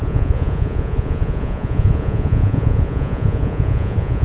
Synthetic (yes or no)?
yes